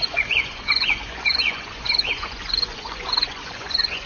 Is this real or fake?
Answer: fake